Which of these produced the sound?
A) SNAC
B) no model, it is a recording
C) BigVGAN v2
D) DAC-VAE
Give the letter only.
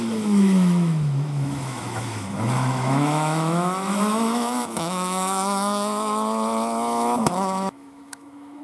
D